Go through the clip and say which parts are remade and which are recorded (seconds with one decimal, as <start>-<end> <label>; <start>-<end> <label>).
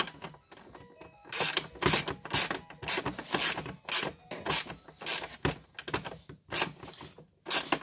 0.0-7.8 recorded